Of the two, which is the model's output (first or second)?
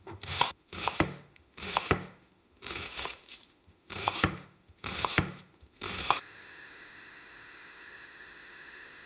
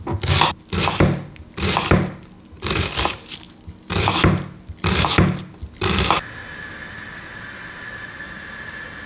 first